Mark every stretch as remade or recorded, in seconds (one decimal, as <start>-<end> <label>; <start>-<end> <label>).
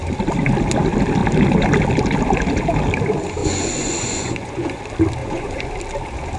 0.0-3.4 recorded; 3.4-4.8 remade; 4.8-5.2 recorded; 5.2-5.7 remade; 5.7-6.4 recorded